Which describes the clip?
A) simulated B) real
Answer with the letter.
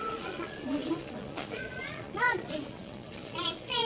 A